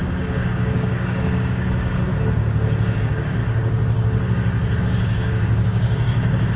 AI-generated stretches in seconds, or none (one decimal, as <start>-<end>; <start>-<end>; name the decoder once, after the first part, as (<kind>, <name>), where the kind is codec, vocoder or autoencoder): 0.0-2.1 (codec, DAC); 3.0-3.4; 4.8-6.6